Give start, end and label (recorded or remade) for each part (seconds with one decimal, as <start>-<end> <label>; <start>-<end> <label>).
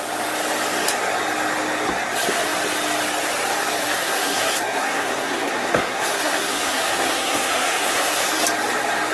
0.0-3.8 recorded; 3.8-8.4 remade; 8.4-9.1 recorded